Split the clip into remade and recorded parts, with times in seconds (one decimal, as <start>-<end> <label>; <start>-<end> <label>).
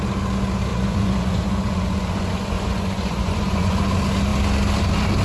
0.0-0.7 recorded; 0.7-3.8 remade; 3.8-5.2 recorded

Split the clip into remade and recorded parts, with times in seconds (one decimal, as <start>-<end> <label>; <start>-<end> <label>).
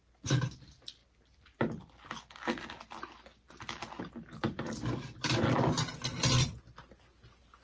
0.0-7.6 recorded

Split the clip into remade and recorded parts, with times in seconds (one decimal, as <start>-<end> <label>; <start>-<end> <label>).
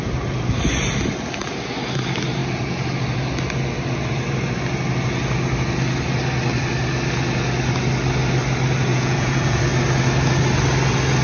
0.0-8.9 recorded; 8.9-9.6 remade; 9.6-11.2 recorded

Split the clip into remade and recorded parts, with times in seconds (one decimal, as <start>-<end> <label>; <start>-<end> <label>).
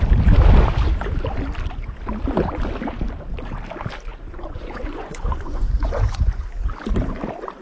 0.0-4.1 recorded; 4.1-6.4 remade; 6.4-7.6 recorded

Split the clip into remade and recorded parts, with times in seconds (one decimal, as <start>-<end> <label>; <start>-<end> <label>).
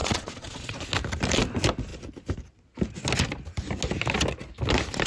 0.0-0.8 remade; 0.8-5.1 recorded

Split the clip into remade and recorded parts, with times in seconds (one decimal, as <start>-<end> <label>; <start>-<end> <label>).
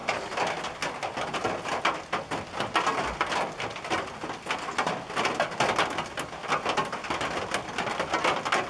0.0-8.7 recorded